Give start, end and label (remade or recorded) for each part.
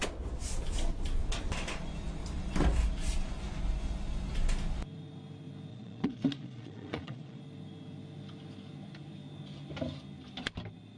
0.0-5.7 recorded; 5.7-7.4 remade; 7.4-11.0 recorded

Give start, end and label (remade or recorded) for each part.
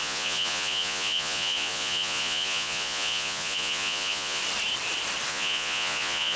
0.0-4.4 remade; 4.4-5.3 recorded; 5.3-6.4 remade